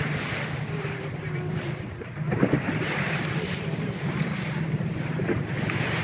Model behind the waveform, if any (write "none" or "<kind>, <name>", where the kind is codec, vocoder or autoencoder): vocoder, BigVGAN v2